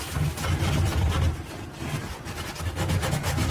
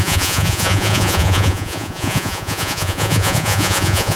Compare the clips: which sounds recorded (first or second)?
first